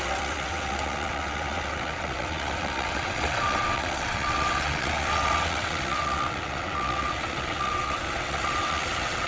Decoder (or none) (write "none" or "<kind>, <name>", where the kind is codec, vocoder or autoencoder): vocoder, WaveNeXt